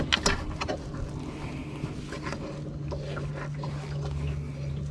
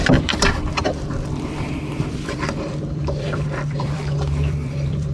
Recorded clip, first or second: first